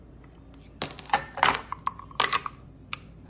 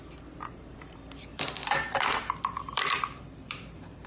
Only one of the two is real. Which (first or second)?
first